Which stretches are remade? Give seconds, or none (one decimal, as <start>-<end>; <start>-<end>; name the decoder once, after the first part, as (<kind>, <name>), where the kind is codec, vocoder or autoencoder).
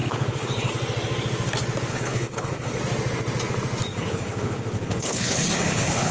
0.0-0.7 (codec, HILCodec); 1.9-2.8; 3.9-6.1